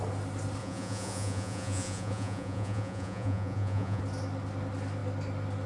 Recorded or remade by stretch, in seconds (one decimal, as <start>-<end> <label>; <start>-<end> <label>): 0.0-0.6 recorded; 0.6-4.0 remade; 4.0-5.7 recorded